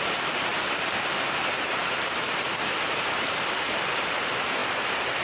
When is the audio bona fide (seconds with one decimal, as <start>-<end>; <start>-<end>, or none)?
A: 0.0-5.2